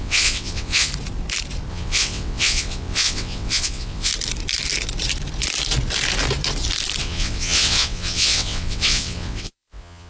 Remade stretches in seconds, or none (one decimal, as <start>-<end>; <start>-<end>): 0.0-0.9; 1.7-4.1; 7.0-10.1